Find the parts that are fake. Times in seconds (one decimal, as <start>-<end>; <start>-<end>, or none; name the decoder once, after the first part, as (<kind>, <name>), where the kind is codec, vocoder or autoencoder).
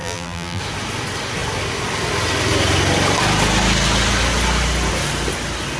0.0-0.6 (vocoder, BigVGAN v2)